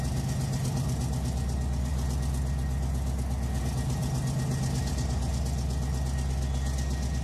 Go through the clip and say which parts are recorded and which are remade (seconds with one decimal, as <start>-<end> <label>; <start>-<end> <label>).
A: 0.0-7.2 recorded